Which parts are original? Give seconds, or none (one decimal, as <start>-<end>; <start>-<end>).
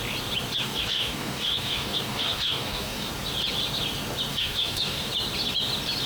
0.0-0.6; 3.1-4.3; 5.1-6.1